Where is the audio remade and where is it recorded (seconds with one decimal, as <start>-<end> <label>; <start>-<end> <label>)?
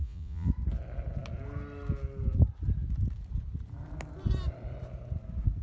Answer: 0.0-0.5 remade; 0.5-5.6 recorded